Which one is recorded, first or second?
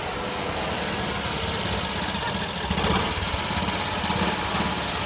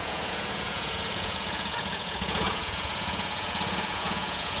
first